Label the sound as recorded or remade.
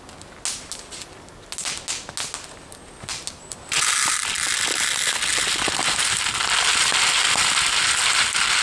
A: recorded